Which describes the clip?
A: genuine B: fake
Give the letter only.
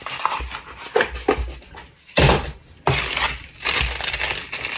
A